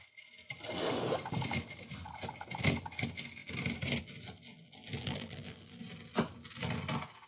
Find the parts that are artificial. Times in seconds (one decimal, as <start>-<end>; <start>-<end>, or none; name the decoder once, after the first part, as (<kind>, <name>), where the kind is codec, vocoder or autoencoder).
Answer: 4.5-5.8 (vocoder, BigVGAN v2)